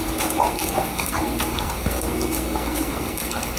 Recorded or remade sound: remade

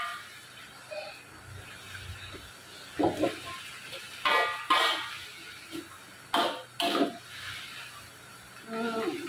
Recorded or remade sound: recorded